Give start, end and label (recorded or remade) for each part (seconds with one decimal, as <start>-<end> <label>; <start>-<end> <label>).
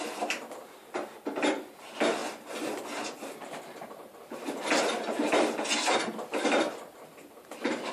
0.0-7.9 recorded